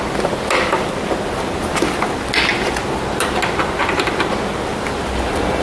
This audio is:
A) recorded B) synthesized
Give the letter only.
A